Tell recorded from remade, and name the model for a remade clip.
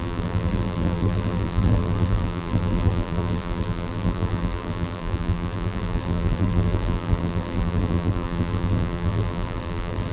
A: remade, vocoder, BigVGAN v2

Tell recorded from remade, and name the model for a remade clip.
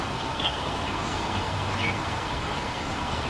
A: remade, codec, SNAC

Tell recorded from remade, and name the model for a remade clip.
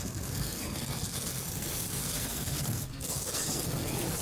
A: remade, codec, SNAC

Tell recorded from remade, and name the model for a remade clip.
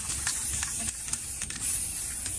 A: remade, vocoder, BigVGAN v2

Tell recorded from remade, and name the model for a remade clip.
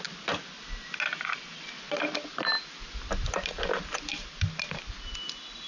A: recorded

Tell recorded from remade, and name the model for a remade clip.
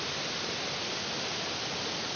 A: recorded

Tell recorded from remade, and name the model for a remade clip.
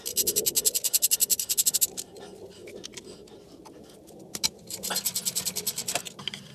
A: recorded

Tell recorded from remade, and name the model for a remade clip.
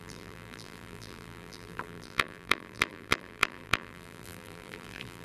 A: remade, vocoder, BigVGAN v2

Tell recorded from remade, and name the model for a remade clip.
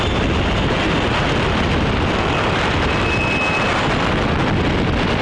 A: recorded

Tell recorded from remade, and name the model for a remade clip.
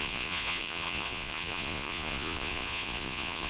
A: remade, vocoder, Vocos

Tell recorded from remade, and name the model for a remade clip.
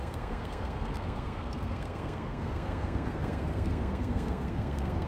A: remade, codec, SNAC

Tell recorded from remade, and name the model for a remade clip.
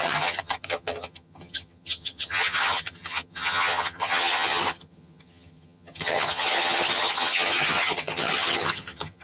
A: remade, vocoder, HiFi-GAN